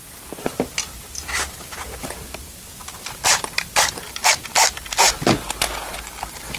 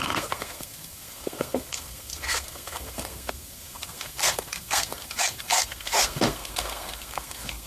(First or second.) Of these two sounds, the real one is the first